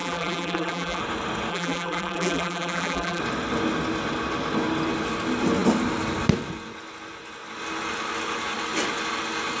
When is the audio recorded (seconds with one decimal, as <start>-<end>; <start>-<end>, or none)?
1.0-1.5; 3.2-9.6